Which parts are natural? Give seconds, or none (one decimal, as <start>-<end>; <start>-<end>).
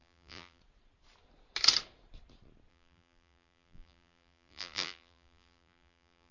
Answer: 0.6-2.7